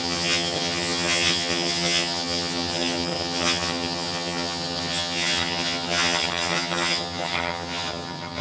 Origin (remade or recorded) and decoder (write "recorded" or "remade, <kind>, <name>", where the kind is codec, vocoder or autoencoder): remade, vocoder, HiFi-GAN